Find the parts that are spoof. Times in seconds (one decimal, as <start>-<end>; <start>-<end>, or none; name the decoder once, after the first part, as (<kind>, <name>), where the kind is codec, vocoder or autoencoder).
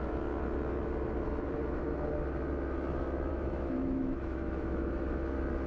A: 3.3-4.9 (autoencoder, DAC-VAE)